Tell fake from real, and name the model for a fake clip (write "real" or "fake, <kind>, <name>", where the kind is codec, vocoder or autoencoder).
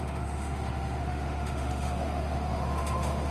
fake, autoencoder, DAC-VAE